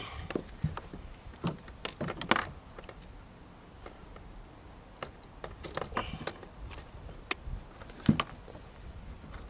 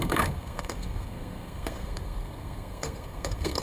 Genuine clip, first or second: first